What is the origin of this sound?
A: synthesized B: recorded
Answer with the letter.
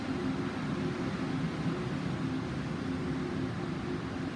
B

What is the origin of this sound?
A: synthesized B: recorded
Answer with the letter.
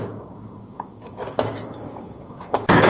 A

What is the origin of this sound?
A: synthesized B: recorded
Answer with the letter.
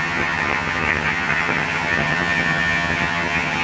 A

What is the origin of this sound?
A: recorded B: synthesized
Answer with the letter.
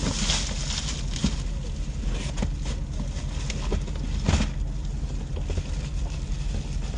A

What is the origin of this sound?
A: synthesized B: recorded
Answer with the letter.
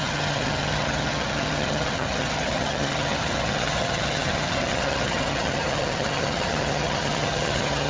A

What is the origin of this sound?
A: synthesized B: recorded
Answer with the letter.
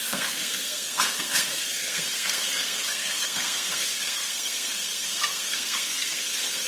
A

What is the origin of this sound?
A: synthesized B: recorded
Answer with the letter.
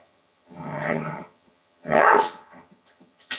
A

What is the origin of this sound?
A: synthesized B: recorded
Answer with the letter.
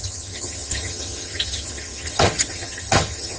A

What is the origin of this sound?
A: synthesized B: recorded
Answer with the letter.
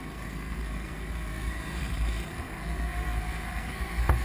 A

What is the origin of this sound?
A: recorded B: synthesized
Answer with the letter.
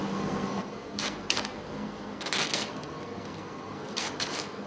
B